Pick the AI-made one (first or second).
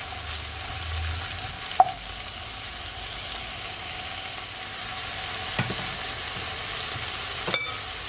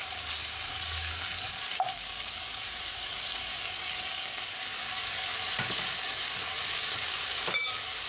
second